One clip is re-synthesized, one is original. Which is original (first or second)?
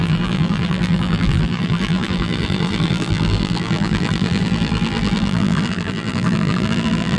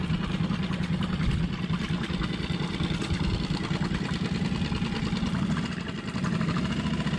second